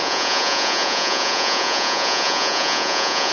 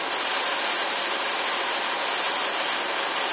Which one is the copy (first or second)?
first